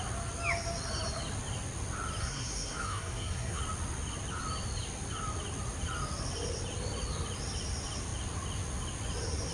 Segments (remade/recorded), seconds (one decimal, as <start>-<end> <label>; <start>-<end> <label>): 0.0-2.2 recorded; 2.2-3.6 remade; 3.6-9.5 recorded